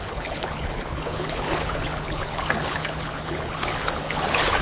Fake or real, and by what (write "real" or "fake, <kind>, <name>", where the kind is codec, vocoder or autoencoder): fake, codec, HILCodec